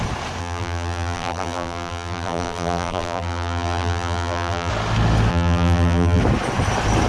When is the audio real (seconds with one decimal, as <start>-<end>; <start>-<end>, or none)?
0.0-0.4; 4.7-5.3; 6.2-7.1